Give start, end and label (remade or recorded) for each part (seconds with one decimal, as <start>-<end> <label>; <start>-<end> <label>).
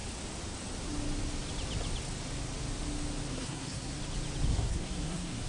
0.0-3.3 recorded; 3.3-4.0 remade; 4.0-4.5 recorded; 4.5-5.5 remade